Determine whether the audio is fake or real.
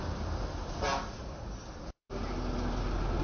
real